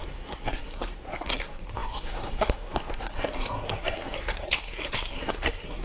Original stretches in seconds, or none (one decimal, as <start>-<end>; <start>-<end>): none